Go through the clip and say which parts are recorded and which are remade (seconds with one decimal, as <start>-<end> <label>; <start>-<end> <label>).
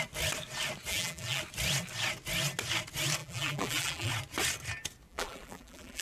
0.0-0.9 recorded; 0.9-1.4 remade; 1.4-3.2 recorded; 3.2-4.1 remade; 4.1-5.1 recorded; 5.1-6.0 remade